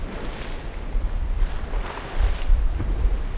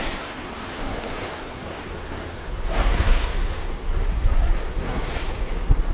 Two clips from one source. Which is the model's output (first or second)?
second